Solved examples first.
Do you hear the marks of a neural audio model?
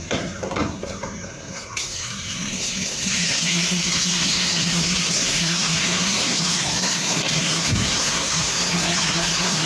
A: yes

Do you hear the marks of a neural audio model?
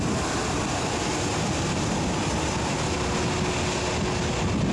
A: no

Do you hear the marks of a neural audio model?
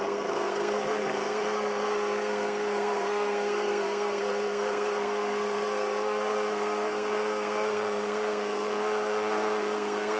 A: yes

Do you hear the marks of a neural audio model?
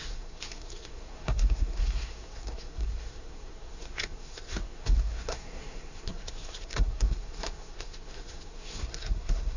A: yes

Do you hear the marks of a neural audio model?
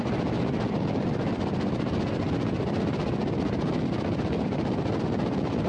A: no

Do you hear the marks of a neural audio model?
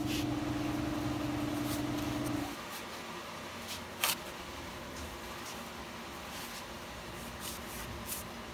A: no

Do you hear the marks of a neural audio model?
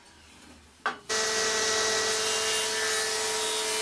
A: no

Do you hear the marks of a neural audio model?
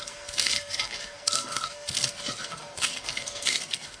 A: yes